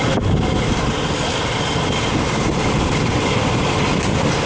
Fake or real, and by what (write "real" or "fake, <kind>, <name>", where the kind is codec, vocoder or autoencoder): real